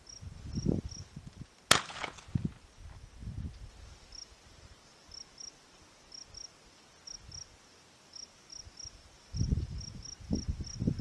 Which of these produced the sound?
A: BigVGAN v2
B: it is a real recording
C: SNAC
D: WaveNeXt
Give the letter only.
B